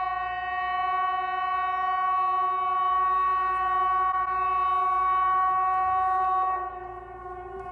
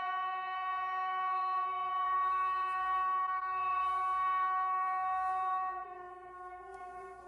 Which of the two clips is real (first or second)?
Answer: first